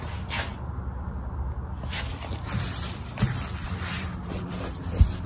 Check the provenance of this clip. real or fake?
fake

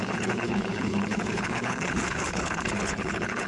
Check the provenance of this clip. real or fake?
fake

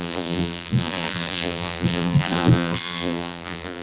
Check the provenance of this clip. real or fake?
fake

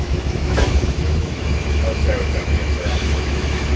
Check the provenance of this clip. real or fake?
fake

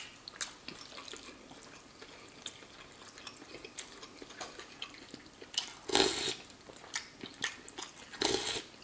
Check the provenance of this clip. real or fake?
real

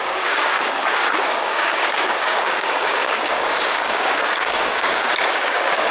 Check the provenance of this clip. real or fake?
fake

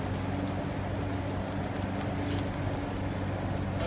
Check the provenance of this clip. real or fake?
real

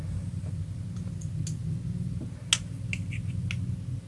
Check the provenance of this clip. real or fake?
real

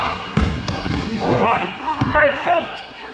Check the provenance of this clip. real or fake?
fake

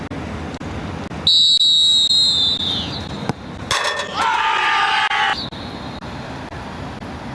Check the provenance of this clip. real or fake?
real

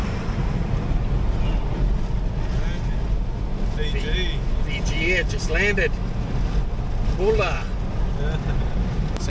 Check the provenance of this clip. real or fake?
real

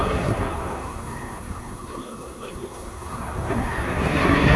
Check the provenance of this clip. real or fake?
fake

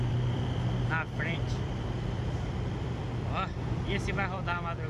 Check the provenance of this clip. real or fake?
fake